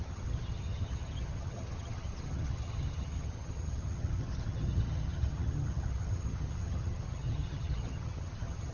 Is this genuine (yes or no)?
no